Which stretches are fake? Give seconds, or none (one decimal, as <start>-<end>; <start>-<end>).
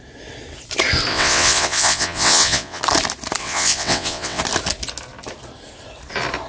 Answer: 1.1-2.8; 3.4-4.4